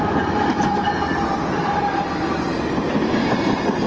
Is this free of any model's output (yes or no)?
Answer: yes